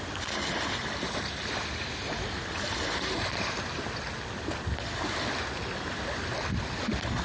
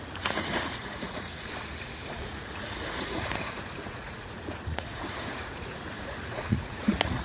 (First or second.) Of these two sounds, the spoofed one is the second